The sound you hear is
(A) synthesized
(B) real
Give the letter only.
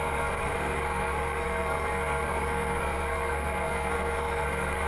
A